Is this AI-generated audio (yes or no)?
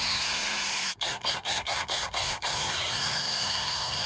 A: yes